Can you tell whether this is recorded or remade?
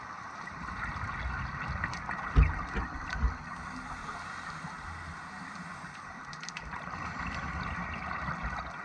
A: recorded